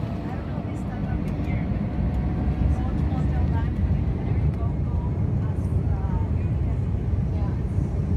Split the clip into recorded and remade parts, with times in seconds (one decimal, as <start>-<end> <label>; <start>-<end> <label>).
0.0-1.0 recorded; 1.0-1.7 remade; 1.7-3.7 recorded; 3.7-8.2 remade